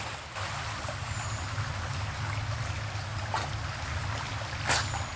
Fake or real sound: real